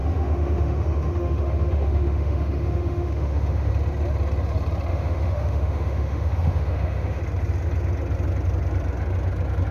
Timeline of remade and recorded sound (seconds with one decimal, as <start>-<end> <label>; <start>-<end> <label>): 0.0-3.7 remade; 3.7-4.9 recorded; 4.9-7.2 remade; 7.2-9.7 recorded